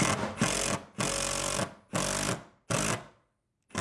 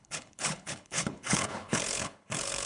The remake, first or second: second